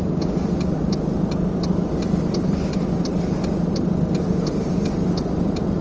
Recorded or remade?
recorded